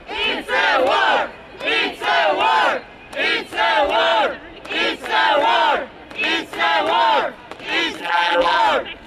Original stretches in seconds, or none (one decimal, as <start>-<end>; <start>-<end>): 0.0-8.0; 8.6-9.1